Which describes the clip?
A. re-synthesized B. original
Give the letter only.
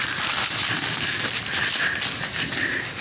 B